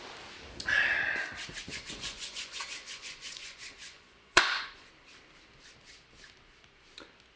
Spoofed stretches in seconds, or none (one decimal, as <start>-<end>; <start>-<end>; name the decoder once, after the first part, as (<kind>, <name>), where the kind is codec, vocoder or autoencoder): 1.7-4.9 (vocoder, Vocos)